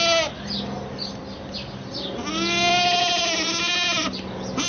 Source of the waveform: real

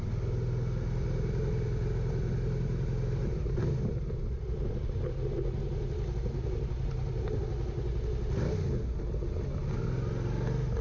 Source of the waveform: real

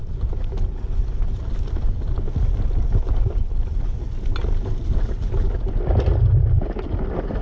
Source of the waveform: real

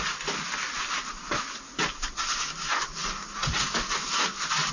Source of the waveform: real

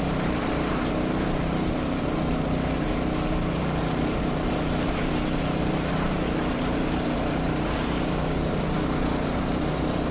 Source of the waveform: fake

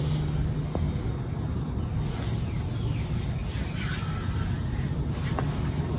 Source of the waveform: real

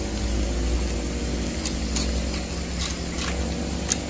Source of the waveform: real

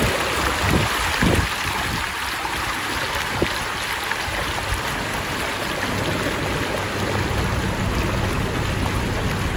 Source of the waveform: real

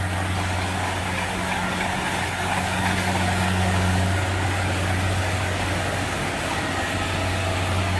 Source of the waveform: fake